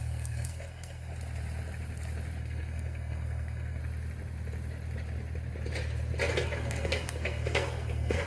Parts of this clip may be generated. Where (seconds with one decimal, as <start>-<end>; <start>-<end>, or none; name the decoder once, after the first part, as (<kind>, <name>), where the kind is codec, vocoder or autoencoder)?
0.0-1.1 (codec, SNAC); 2.4-3.8; 6.3-8.3